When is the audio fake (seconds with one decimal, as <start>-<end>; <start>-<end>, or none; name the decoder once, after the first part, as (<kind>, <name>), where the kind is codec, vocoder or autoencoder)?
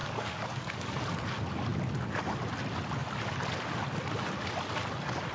0.0-1.0 (codec, DAC)